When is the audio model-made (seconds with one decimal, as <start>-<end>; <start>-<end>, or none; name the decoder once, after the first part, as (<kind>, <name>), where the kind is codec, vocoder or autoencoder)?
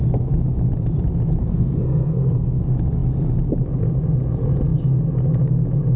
1.4-2.6 (codec, SNAC)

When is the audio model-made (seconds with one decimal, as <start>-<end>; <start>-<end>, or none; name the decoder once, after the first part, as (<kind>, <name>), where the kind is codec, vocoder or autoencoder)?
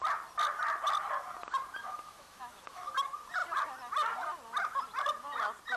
1.8-2.9 (autoencoder, DAC-VAE)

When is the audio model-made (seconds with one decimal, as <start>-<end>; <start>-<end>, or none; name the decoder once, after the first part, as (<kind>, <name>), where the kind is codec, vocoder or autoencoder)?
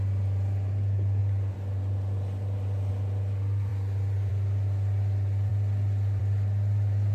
none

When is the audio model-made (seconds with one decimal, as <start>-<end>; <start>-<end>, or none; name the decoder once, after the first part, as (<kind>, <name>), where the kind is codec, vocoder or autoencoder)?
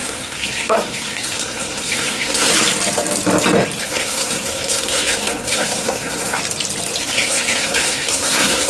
0.0-2.5 (codec, SNAC); 3.8-6.4; 7.0-8.7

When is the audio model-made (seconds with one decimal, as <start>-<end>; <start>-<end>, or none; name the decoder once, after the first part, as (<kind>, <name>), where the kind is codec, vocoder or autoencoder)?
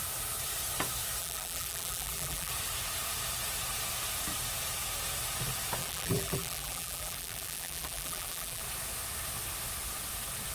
1.2-2.5 (vocoder, BigVGAN v2); 5.8-8.6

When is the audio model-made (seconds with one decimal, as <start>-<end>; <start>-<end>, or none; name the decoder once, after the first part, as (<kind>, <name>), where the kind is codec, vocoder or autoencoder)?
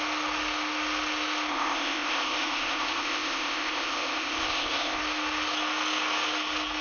1.5-5.0 (codec, ZipCodec)